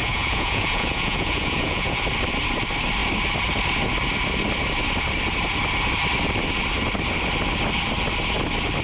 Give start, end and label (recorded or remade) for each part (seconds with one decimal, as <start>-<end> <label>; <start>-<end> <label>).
0.0-2.0 remade; 2.0-8.8 recorded